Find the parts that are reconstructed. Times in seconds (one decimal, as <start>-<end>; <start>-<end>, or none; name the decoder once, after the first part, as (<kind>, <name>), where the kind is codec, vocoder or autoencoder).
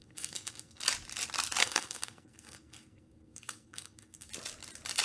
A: 0.0-0.8 (codec, SNAC); 1.6-4.3